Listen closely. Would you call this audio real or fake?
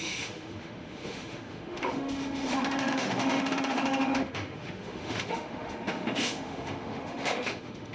fake